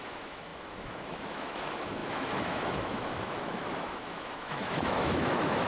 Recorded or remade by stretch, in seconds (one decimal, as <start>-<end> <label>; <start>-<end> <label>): 0.0-5.7 remade